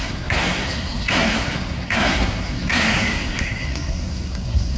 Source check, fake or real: fake